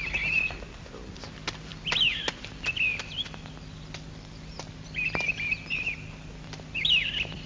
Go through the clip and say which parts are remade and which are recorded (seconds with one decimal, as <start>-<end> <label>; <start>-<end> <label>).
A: 0.0-7.5 recorded

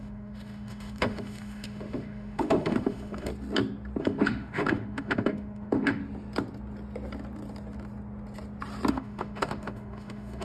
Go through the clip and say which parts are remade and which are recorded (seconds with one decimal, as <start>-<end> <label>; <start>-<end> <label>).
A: 0.0-3.3 remade; 3.3-4.0 recorded; 4.0-6.0 remade; 6.0-8.9 recorded; 8.9-10.4 remade

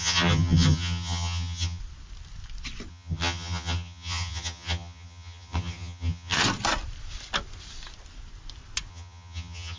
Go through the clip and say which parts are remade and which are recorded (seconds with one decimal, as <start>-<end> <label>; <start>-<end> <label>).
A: 0.0-1.8 remade; 1.8-2.9 recorded; 2.9-6.4 remade; 6.4-8.9 recorded; 8.9-9.8 remade

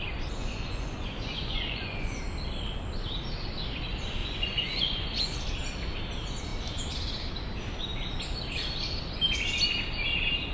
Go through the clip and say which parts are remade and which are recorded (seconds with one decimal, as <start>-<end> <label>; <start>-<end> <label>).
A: 0.0-0.4 recorded; 0.4-2.2 remade; 2.2-4.2 recorded; 4.2-5.4 remade; 5.4-10.5 recorded

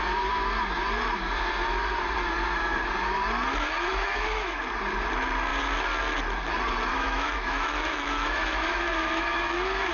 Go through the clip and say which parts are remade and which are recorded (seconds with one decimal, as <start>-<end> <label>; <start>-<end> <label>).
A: 0.0-3.9 recorded; 3.9-4.6 remade; 4.6-6.9 recorded; 6.9-9.9 remade

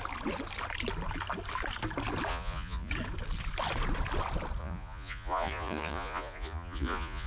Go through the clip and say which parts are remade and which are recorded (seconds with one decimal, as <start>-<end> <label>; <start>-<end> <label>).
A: 0.0-2.3 recorded; 2.3-2.9 remade; 2.9-4.6 recorded; 4.6-7.3 remade

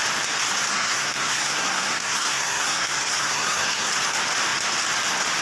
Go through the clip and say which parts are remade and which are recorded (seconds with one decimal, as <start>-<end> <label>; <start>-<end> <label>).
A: 0.0-0.7 recorded; 0.7-3.9 remade; 3.9-5.4 recorded